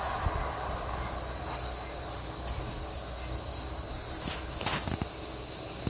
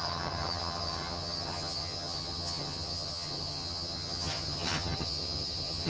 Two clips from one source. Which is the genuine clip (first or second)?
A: first